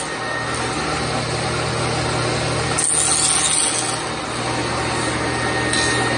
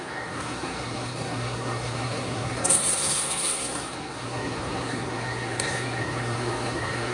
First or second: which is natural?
first